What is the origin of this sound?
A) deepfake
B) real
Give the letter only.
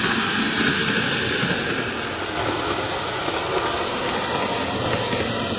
B